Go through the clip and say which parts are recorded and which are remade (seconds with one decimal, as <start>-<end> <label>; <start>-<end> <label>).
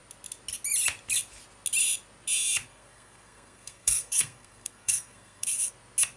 0.0-2.7 recorded; 2.7-5.7 remade; 5.7-6.2 recorded